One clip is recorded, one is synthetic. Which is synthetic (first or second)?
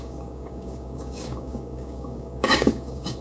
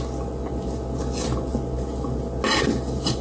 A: first